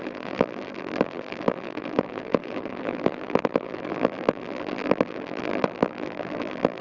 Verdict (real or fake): fake